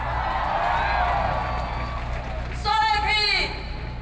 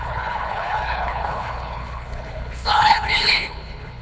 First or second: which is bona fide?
first